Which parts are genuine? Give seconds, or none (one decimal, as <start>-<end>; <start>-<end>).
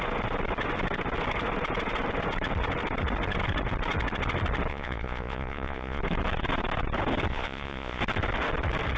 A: 0.0-4.7; 6.0-7.3; 8.0-9.0